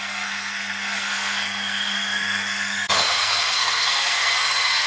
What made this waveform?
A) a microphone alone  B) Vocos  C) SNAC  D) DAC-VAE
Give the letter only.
C